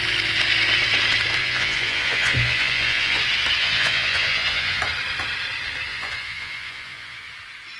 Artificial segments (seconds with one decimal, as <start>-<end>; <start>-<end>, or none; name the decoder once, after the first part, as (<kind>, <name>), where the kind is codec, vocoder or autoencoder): 1.4-3.2 (vocoder, Vocos); 3.6-4.8; 5.9-7.3